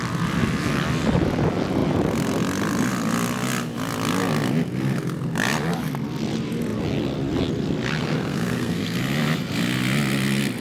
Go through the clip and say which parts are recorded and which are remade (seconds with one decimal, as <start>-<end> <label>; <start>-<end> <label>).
0.0-8.0 recorded; 8.0-9.0 remade; 9.0-10.6 recorded